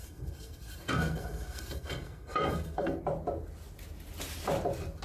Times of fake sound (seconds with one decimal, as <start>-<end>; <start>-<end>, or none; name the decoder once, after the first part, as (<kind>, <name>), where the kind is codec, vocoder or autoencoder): 0.0-3.0 (codec, SNAC)